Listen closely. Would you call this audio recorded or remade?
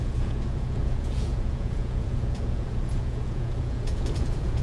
remade